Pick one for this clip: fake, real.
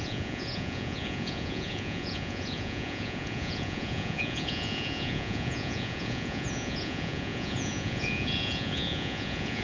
fake